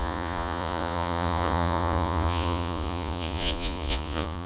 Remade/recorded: remade